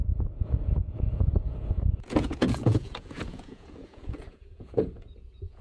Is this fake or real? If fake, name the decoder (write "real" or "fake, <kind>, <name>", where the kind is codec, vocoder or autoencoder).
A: fake, vocoder, Vocos